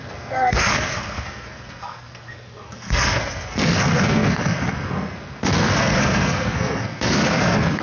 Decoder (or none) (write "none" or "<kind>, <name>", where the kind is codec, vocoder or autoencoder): codec, SNAC